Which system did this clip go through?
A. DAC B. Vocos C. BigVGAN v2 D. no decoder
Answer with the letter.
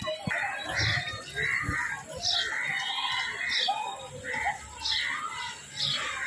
D